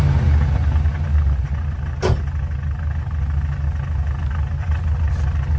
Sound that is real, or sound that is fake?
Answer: real